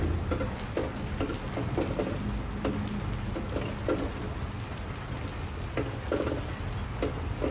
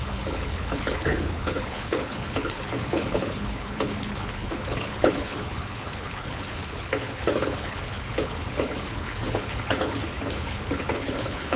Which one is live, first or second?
first